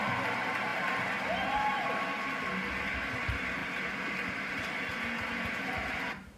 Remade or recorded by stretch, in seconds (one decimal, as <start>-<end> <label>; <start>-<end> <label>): 0.0-6.4 recorded